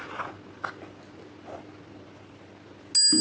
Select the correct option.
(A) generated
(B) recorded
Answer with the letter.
B